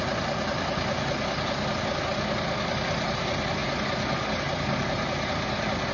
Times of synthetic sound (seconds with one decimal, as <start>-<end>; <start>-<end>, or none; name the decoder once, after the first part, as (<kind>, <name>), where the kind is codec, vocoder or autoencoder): none